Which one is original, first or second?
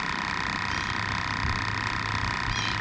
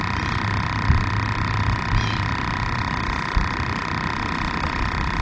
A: first